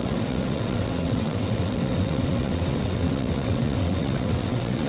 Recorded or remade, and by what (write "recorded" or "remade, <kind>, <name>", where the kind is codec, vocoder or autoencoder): remade, vocoder, WaveNeXt